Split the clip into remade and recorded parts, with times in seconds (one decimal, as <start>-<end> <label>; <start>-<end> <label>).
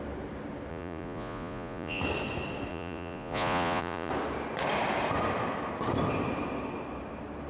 0.0-0.7 recorded; 0.7-2.0 remade; 2.0-2.7 recorded; 2.7-4.1 remade; 4.1-7.5 recorded